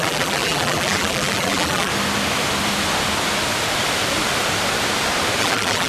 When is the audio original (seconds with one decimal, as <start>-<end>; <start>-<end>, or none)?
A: 1.9-5.4

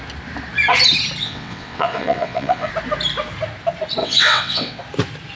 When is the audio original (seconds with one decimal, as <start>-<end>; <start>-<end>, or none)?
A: 0.0-1.2; 2.7-4.0; 4.8-5.4